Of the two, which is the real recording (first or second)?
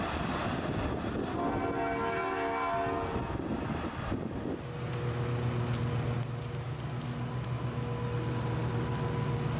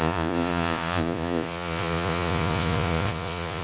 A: first